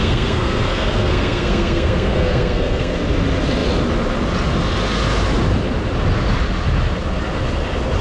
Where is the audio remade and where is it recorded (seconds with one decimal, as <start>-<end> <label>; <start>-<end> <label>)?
0.0-3.0 remade; 3.0-8.0 recorded